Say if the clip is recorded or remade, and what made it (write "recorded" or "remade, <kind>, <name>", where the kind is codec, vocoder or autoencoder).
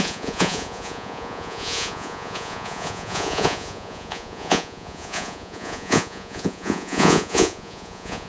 remade, vocoder, Vocos